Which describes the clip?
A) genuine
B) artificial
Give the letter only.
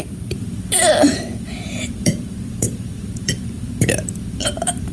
B